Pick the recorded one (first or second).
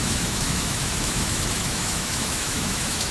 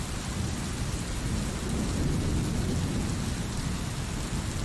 second